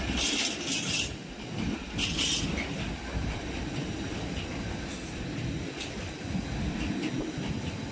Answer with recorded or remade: recorded